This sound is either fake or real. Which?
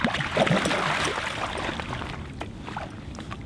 real